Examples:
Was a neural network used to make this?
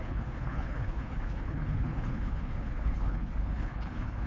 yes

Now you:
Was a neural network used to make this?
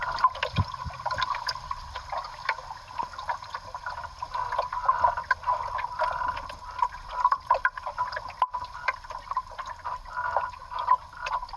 yes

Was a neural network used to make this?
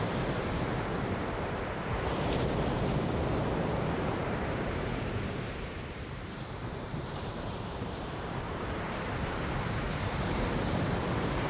yes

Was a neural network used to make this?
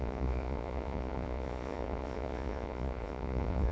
yes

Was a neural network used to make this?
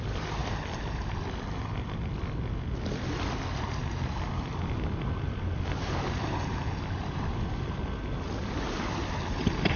no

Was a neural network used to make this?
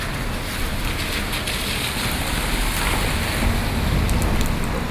no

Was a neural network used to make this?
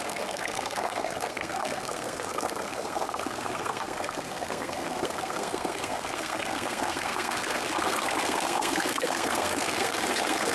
yes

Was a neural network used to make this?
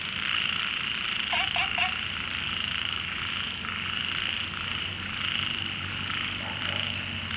no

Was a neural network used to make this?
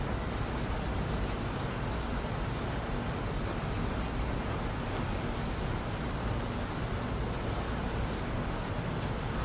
no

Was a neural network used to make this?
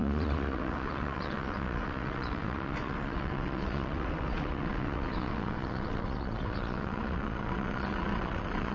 yes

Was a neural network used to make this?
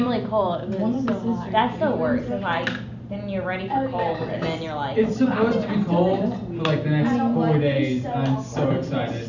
no